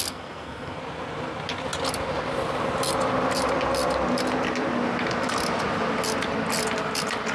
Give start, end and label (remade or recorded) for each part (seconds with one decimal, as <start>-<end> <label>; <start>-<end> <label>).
0.0-0.8 remade; 0.8-7.3 recorded